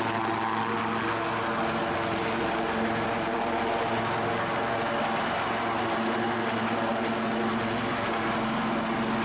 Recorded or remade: recorded